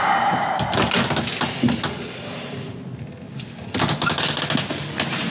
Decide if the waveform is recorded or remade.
recorded